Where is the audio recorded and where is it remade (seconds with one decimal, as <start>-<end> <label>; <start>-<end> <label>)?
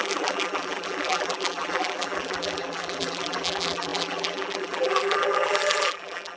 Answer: 0.0-6.4 remade